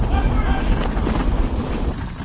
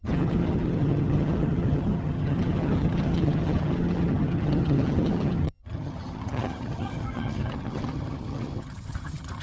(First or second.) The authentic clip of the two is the first